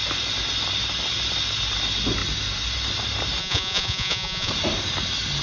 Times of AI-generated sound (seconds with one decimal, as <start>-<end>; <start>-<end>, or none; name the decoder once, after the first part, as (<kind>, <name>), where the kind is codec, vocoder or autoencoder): 3.4-4.5 (vocoder, Vocos)